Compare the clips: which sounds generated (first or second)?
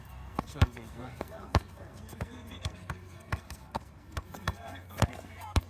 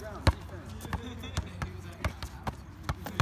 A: first